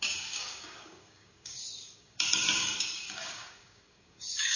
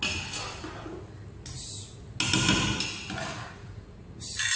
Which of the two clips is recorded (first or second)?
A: second